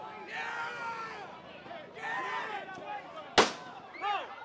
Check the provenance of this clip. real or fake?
real